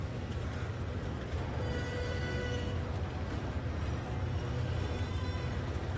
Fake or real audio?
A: real